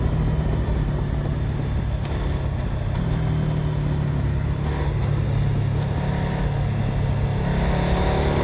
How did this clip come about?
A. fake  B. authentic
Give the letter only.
B